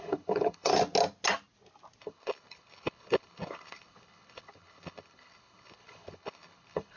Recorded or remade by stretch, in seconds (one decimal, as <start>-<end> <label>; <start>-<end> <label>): 0.0-0.7 remade; 0.7-2.0 recorded; 2.0-7.0 remade